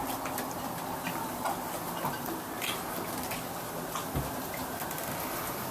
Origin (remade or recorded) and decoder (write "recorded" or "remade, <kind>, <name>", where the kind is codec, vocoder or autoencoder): recorded